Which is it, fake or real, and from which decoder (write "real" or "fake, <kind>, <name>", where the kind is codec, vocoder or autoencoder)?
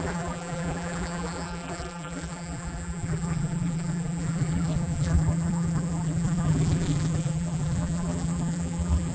fake, vocoder, BigVGAN v2